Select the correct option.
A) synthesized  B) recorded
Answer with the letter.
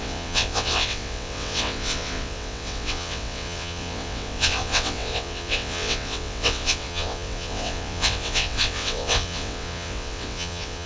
A